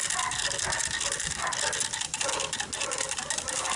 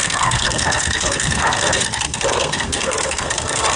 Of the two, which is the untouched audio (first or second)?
first